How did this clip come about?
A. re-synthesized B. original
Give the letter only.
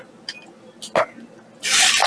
B